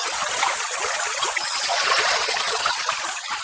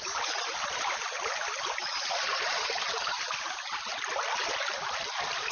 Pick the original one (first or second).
second